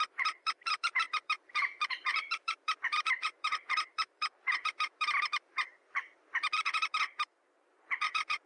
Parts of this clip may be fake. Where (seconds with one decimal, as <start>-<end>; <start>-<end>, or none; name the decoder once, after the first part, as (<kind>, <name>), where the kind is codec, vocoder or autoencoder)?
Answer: 0.0-8.5 (vocoder, BigVGAN v2)